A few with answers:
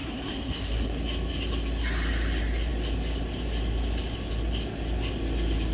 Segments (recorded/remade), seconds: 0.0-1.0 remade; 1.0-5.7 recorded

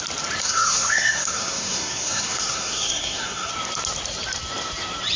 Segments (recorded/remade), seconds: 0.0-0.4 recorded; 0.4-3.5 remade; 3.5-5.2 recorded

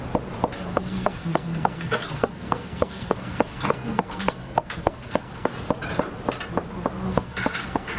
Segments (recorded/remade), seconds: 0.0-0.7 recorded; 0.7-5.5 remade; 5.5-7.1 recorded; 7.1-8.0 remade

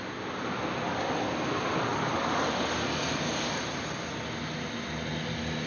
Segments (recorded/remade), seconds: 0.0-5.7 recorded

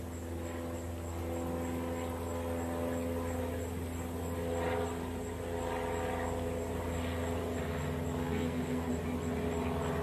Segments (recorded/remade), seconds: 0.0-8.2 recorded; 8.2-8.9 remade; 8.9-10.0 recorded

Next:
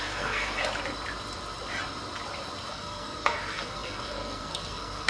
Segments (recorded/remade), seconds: 0.0-0.6 remade; 0.6-2.7 recorded; 2.7-5.1 remade